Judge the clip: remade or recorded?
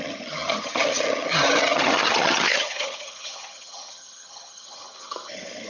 remade